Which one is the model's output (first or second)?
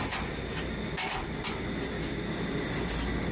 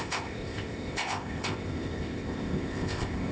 second